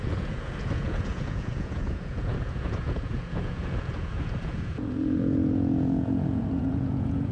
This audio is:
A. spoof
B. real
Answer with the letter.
A